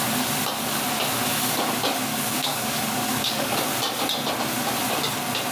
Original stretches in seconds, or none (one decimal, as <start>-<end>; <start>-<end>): 0.0-1.3; 3.6-5.5

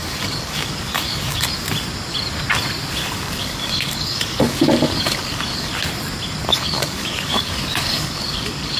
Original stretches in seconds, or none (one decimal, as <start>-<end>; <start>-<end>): 1.5-3.0; 5.7-6.5

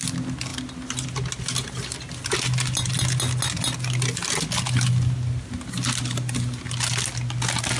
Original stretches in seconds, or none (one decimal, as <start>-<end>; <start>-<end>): 0.0-7.8

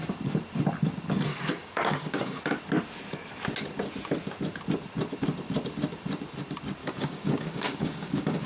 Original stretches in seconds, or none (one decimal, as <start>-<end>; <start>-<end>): 0.0-1.3; 2.4-6.8

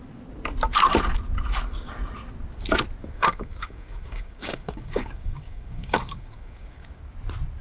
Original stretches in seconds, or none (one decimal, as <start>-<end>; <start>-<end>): 0.0-3.0; 7.0-7.6

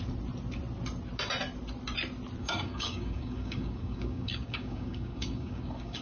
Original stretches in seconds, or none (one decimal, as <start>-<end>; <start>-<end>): 0.0-2.4

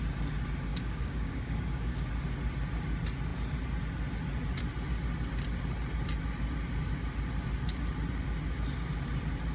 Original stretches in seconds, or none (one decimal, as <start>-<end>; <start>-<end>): 0.0-0.7; 2.1-9.5

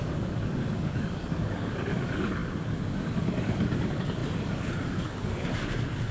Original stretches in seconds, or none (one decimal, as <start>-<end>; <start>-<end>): none